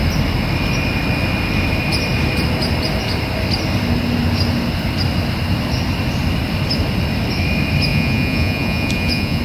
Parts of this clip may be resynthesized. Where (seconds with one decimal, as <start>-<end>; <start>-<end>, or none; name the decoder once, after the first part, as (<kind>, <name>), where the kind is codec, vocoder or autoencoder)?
7.9-9.4 (vocoder, Vocos)